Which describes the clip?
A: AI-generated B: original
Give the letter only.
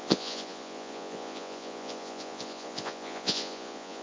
A